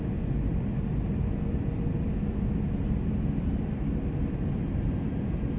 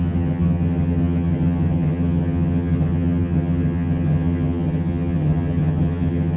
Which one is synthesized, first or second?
second